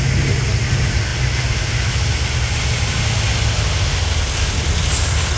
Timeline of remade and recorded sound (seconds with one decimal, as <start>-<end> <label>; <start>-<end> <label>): 0.0-5.4 recorded